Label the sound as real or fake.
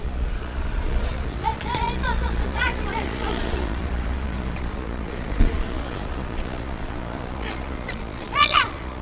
fake